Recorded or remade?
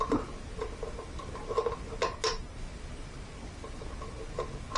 recorded